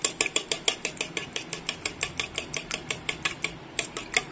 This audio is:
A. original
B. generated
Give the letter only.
A